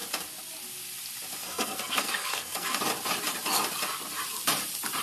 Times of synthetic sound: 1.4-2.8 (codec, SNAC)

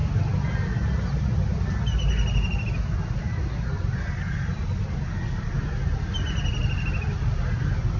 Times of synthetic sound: none

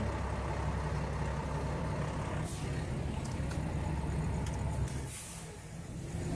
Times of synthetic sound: none